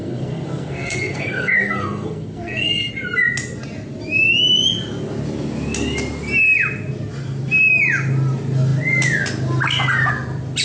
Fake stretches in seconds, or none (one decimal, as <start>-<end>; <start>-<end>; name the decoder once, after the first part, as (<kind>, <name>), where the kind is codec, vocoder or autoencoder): 0.0-2.9 (codec, SNAC)